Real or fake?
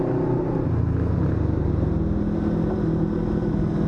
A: real